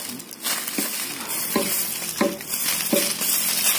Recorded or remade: recorded